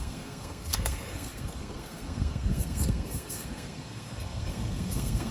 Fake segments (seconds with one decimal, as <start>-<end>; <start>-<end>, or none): 0.0-5.3